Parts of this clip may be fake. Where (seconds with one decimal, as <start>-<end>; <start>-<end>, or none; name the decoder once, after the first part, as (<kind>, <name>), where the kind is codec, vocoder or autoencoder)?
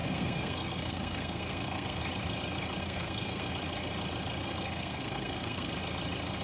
0.0-2.0 (codec, SNAC); 2.8-3.5; 4.4-5.7